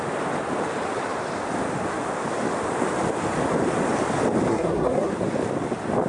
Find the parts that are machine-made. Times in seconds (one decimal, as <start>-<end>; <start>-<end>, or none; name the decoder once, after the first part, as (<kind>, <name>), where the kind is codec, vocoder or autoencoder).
4.5-5.1 (codec, SNAC)